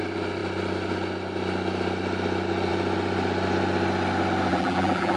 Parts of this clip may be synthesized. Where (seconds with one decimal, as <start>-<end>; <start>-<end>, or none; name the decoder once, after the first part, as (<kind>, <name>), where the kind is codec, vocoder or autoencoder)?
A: 4.5-5.2 (vocoder, BigVGAN v2)

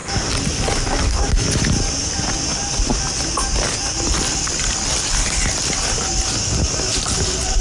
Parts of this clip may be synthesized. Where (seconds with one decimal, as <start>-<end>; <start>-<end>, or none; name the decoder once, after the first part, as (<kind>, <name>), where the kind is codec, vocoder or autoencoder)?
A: 0.0-1.3 (vocoder, BigVGAN v2)